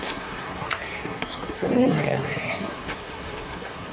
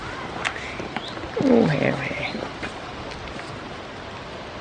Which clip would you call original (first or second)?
second